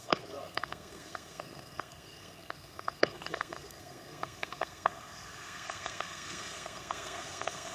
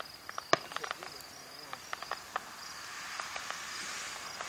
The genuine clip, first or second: second